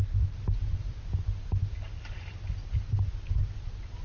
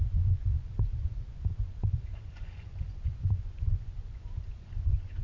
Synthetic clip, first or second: second